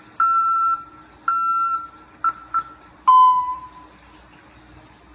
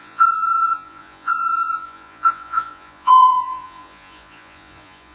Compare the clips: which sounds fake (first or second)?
second